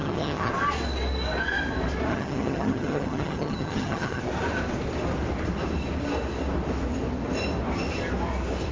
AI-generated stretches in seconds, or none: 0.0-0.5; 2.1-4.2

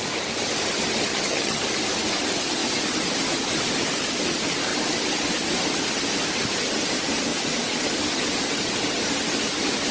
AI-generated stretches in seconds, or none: 1.1-1.6